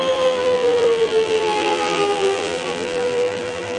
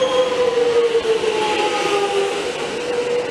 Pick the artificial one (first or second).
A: first